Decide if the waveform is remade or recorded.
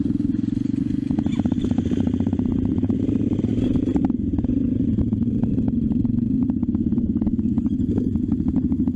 recorded